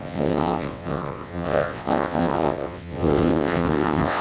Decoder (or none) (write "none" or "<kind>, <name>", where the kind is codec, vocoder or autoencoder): vocoder, WaveNeXt